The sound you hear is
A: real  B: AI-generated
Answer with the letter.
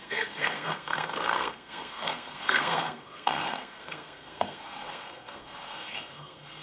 B